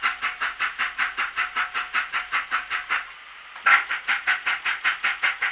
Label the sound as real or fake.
real